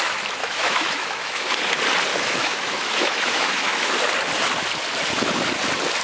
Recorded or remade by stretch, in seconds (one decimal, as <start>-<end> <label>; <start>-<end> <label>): 0.0-0.4 recorded; 0.4-1.5 remade; 1.5-2.1 recorded; 2.1-3.9 remade; 3.9-6.0 recorded